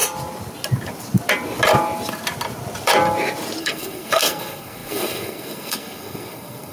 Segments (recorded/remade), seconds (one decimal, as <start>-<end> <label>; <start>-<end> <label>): 0.0-3.6 recorded; 3.6-6.7 remade